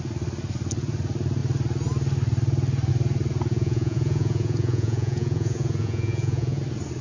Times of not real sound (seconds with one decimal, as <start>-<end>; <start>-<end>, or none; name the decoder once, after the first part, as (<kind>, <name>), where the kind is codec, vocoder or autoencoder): 3.5-6.6 (vocoder, Vocos)